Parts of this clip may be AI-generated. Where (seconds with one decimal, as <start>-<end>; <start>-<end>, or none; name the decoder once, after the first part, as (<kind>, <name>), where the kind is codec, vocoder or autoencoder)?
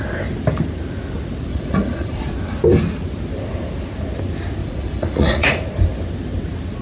1.5-2.2 (vocoder, Vocos); 4.6-5.6